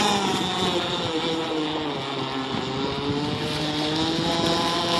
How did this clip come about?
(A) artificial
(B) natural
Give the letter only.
B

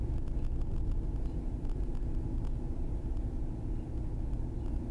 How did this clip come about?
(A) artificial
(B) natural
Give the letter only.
B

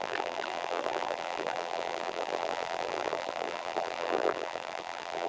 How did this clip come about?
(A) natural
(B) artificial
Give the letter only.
B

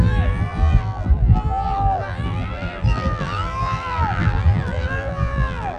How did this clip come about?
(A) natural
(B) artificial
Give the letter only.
B